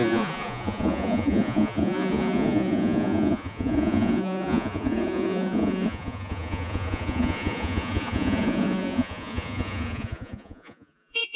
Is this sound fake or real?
fake